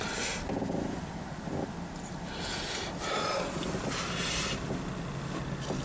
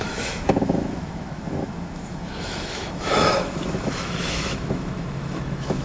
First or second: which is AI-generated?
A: second